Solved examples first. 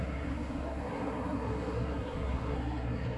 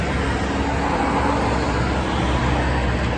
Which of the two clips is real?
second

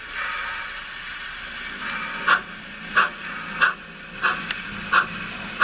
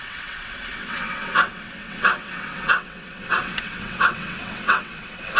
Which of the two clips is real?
first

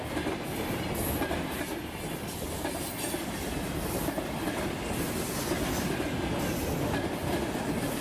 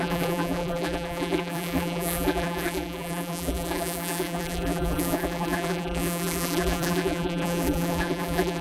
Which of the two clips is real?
first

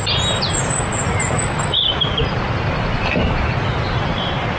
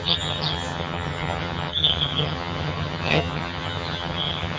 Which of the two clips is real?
first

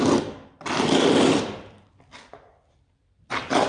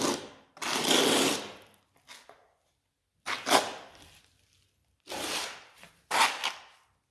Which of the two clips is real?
second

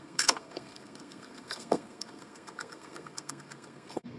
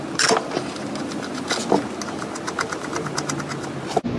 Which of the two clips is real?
second